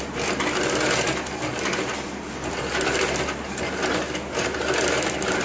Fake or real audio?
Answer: real